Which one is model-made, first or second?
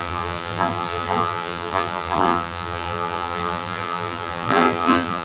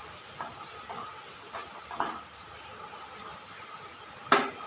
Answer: first